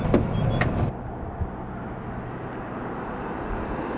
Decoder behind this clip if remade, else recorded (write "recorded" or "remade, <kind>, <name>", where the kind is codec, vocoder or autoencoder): recorded